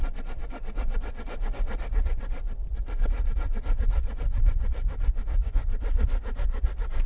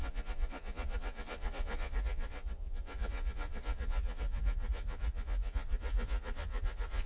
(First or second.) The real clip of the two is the first